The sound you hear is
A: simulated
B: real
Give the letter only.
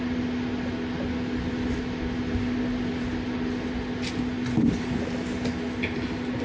B